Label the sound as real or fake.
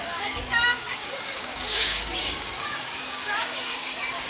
fake